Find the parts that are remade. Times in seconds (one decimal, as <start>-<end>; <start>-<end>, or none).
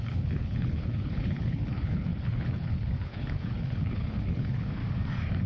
0.0-4.8